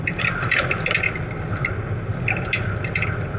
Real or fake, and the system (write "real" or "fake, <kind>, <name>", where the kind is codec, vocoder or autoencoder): real